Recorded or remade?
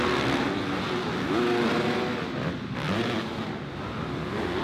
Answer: recorded